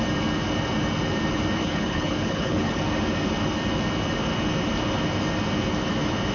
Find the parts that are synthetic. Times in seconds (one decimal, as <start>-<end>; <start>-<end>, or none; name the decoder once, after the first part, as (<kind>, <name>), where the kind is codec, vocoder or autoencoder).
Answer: 1.6-2.8 (codec, HILCodec)